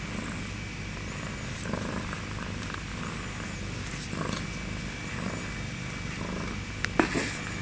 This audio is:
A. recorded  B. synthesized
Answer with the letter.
A